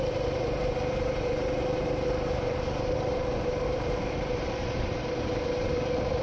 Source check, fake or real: fake